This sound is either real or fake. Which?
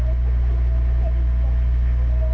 real